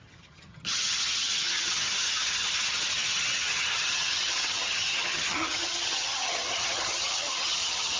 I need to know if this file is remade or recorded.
remade